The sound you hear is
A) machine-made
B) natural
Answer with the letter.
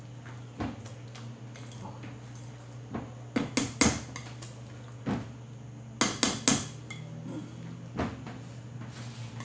B